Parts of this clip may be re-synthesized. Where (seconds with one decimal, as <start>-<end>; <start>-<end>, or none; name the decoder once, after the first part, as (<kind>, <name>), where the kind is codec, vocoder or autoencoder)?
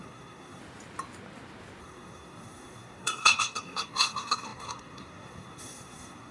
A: 0.0-0.6 (codec, SNAC); 1.8-6.3